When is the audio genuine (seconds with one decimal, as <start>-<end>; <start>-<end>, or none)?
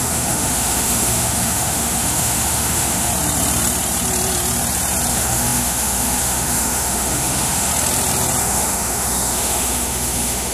3.1-5.1; 7.7-8.4